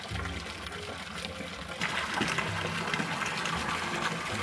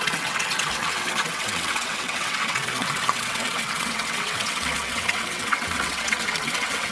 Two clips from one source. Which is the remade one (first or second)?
second